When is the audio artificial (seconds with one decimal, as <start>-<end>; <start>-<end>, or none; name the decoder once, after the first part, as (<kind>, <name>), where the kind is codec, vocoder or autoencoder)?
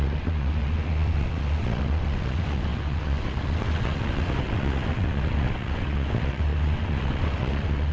0.0-7.9 (vocoder, WaveNeXt)